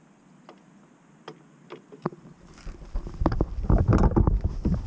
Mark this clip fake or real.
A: real